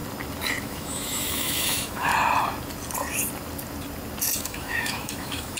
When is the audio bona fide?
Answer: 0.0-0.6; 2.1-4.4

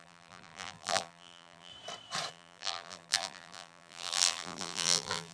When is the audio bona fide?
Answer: 1.7-2.3